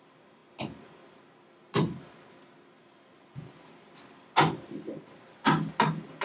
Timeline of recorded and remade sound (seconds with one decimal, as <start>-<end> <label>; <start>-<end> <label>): 0.0-6.2 recorded